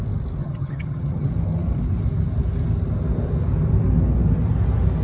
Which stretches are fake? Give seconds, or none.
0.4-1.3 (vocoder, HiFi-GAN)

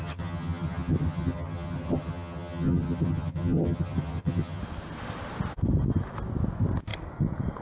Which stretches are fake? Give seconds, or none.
0.0-4.6 (vocoder, HiFi-GAN)

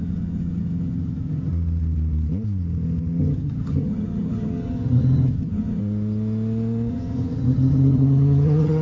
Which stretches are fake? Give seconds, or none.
0.0-1.5 (vocoder, HiFi-GAN); 3.2-5.8; 6.9-8.8

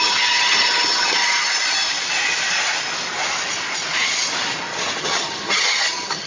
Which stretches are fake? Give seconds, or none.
0.0-1.2 (vocoder, HiFi-GAN); 5.0-6.3

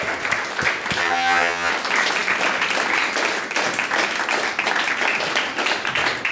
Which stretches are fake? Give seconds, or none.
1.0-1.7 (vocoder, HiFi-GAN)